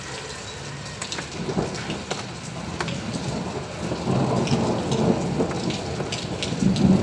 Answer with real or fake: real